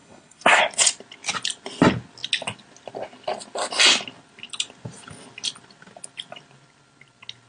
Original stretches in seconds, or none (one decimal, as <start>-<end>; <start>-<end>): 0.6-7.5